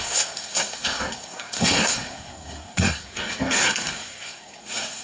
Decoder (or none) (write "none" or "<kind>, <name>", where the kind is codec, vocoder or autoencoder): codec, SNAC